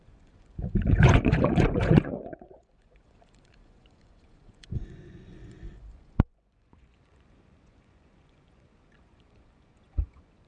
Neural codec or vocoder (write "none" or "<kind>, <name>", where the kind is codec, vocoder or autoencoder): vocoder, Vocos